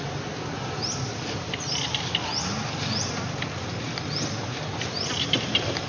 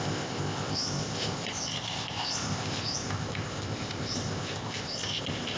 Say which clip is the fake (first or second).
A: second